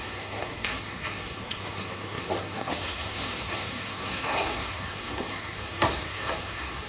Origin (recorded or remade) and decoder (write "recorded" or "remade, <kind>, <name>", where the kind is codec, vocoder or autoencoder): remade, codec, SNAC